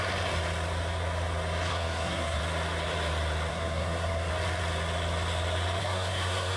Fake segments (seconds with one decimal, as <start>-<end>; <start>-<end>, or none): 1.7-2.4; 3.5-4.3; 5.8-6.6